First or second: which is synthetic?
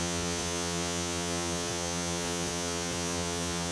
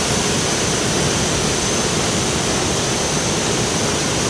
first